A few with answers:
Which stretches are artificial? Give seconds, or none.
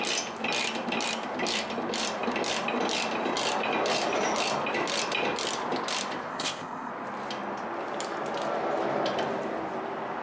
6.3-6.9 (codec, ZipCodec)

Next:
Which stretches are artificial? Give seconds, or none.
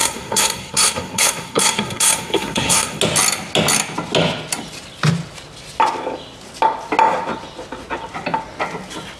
0.0-3.0 (codec, SNAC)